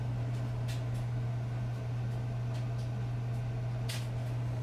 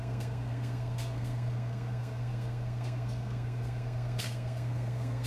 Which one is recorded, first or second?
first